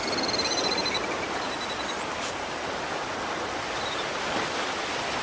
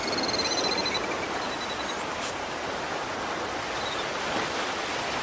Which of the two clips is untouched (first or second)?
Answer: second